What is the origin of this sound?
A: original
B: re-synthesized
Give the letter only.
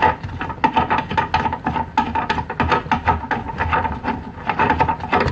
A